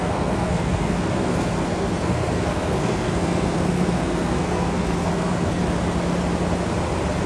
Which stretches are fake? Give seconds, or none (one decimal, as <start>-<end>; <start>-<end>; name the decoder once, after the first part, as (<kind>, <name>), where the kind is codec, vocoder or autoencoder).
0.0-5.6 (codec, SNAC)